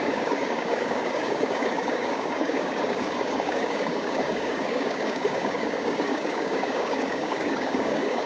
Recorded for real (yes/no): no